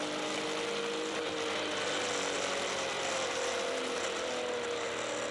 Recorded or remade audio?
recorded